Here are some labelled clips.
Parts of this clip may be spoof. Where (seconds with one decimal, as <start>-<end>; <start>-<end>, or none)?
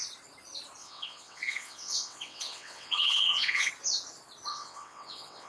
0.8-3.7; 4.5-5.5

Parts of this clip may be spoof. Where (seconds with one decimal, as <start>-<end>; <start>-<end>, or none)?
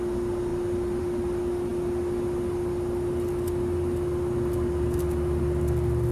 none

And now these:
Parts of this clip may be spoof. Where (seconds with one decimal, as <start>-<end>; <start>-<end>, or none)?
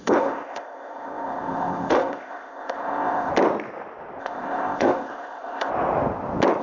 0.0-3.3; 4.2-5.7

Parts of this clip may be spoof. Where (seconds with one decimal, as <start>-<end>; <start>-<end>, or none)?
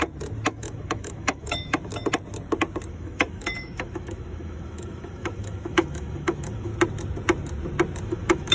0.5-1.9; 2.9-6.7; 8.0-8.5